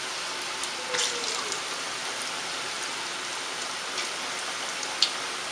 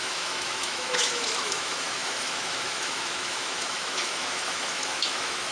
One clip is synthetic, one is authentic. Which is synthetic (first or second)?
second